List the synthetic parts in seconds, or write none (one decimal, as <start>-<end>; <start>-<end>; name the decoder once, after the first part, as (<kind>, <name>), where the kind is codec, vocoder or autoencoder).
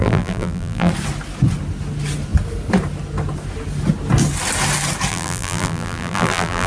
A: 0.0-0.9 (vocoder, BigVGAN v2); 5.1-6.7